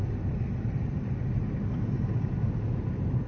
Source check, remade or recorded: recorded